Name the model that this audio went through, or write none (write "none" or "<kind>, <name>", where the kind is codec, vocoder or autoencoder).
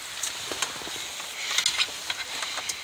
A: none